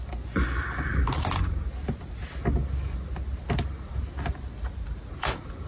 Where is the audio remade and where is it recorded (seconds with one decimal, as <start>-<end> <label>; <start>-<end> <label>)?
0.0-5.7 recorded